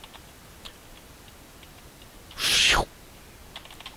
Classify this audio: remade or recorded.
recorded